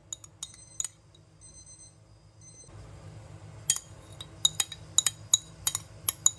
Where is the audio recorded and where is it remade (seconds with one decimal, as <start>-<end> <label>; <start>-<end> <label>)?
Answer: 0.0-6.4 recorded